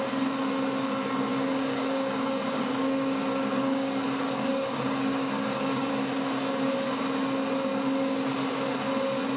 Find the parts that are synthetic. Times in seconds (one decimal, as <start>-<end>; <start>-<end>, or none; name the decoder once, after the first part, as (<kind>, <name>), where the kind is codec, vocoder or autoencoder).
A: 1.3-5.9 (codec, DAC)